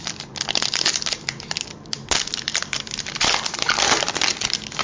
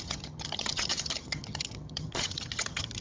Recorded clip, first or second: first